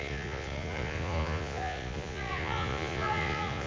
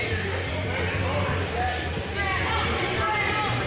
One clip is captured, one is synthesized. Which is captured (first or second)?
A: second